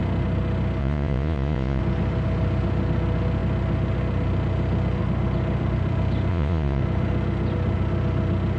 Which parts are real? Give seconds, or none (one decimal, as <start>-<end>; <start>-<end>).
0.0-0.8; 1.8-6.3; 6.8-8.6